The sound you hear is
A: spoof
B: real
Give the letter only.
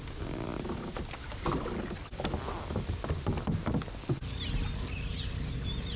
B